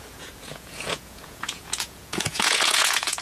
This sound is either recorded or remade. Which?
remade